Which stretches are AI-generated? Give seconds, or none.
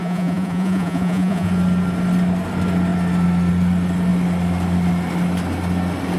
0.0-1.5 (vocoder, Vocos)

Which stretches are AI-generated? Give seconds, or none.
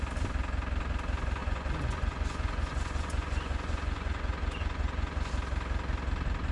1.4-5.3 (vocoder, Vocos)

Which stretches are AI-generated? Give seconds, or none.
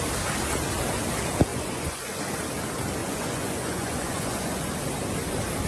1.5-2.2 (vocoder, Vocos); 3.0-4.7